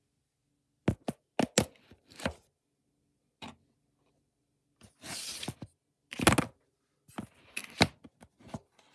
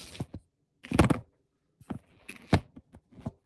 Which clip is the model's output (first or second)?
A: second